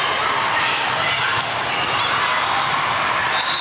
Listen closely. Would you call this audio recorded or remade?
recorded